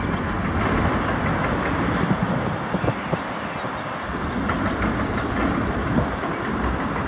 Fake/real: real